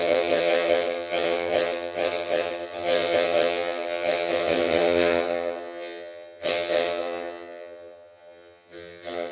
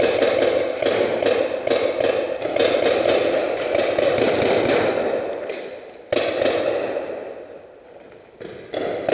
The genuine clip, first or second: second